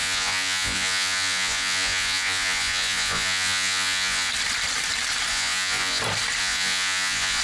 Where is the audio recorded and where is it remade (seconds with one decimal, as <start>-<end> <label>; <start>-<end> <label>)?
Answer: 0.0-4.3 remade; 4.3-5.3 recorded; 5.3-6.0 remade; 6.0-6.4 recorded; 6.4-7.4 remade